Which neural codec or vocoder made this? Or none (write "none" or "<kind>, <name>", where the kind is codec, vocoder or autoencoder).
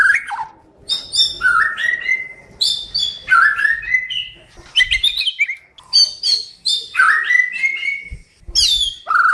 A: none